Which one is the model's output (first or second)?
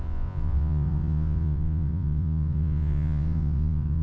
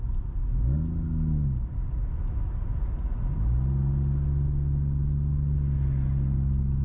first